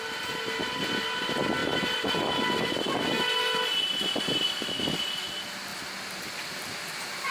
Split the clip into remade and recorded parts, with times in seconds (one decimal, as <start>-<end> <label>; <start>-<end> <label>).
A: 0.0-1.6 recorded; 1.6-4.9 remade; 4.9-5.7 recorded; 5.7-7.3 remade